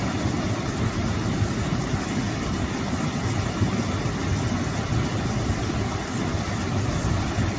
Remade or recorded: recorded